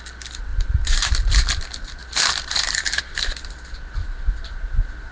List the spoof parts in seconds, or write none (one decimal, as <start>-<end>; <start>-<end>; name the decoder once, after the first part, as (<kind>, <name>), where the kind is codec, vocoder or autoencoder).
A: 0.5-1.3 (vocoder, BigVGAN v2); 2.0-3.0